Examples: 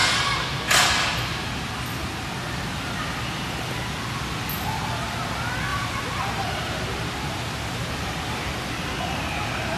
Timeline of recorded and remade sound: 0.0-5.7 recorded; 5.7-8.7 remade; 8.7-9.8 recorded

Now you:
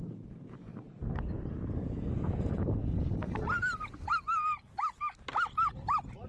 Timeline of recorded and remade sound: 0.0-0.7 remade; 0.7-1.2 recorded; 1.2-2.8 remade; 2.8-5.5 recorded; 5.5-6.3 remade

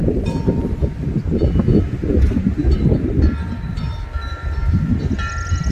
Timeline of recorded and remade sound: 0.0-1.3 remade; 1.3-4.4 recorded; 4.4-5.7 remade

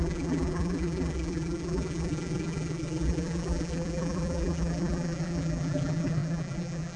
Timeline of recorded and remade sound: 0.0-7.0 remade